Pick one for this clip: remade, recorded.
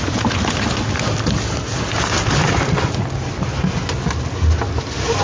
recorded